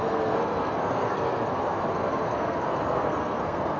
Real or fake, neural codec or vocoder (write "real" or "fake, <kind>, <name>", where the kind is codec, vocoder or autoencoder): fake, codec, SNAC